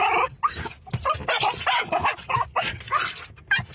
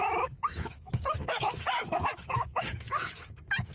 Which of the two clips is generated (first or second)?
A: second